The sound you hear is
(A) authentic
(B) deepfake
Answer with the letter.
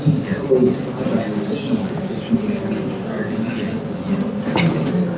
A